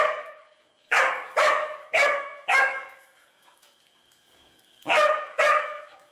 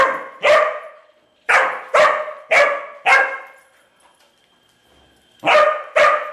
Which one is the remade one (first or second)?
first